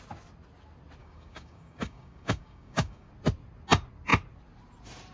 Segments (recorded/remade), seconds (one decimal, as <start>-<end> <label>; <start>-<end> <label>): 0.0-1.0 recorded; 1.0-3.1 remade; 3.1-5.1 recorded